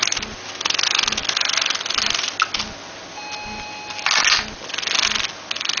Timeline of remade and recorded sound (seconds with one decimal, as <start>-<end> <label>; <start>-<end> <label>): 0.0-5.8 recorded